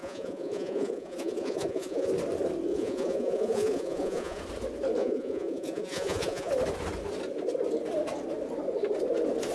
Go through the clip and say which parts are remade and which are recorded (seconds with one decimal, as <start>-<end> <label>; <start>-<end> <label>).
0.0-2.1 remade; 2.1-2.7 recorded; 2.7-4.4 remade; 4.4-5.0 recorded; 5.0-6.5 remade; 6.5-9.5 recorded